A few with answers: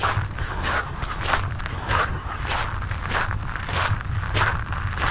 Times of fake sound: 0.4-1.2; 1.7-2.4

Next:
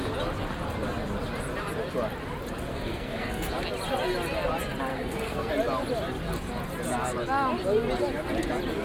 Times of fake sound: 2.7-3.5; 4.9-5.5

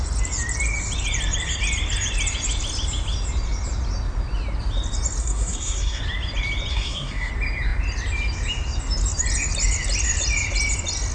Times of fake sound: 5.2-6.0; 6.7-7.3

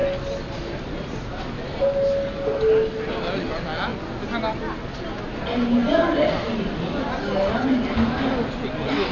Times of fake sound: none

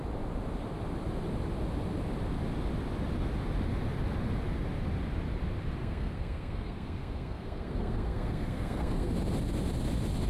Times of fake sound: 5.8-9.1

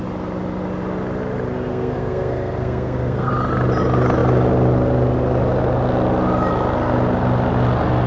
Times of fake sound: 1.7-3.3

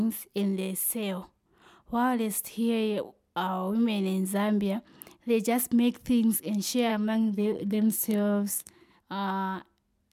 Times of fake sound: 6.9-9.0